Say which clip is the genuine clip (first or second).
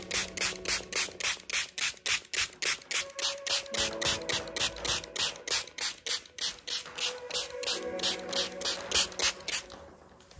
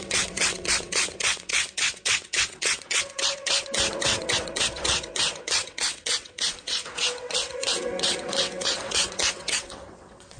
first